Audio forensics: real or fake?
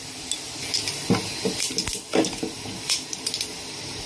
real